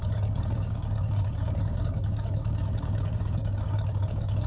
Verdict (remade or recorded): remade